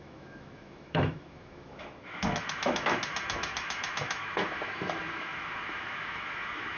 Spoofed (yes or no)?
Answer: yes